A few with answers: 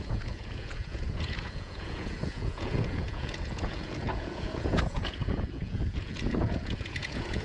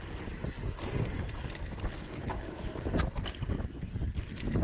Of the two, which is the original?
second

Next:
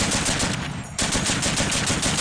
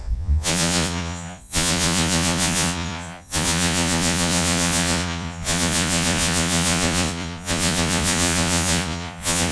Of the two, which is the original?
first